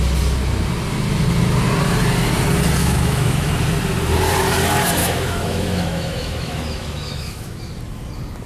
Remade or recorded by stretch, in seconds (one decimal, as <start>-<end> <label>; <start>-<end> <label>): 0.0-2.8 recorded; 2.8-3.5 remade; 3.5-5.0 recorded; 5.0-7.6 remade; 7.6-8.5 recorded